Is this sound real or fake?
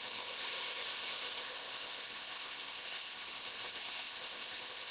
fake